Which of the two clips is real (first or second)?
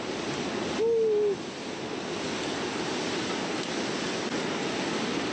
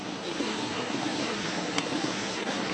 first